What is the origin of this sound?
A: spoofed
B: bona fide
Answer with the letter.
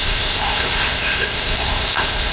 A